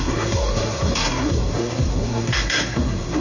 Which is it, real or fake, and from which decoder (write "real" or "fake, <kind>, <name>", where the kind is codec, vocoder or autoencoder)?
fake, codec, SNAC